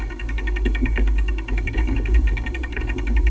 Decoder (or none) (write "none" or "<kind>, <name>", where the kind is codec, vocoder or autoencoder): codec, DAC